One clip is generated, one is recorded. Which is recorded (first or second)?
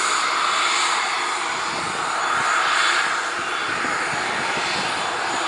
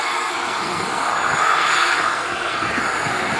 first